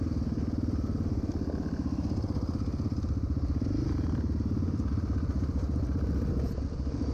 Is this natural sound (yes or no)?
yes